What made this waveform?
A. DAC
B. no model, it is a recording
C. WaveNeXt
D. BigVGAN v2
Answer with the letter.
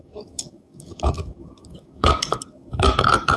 A